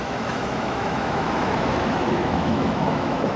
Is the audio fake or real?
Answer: fake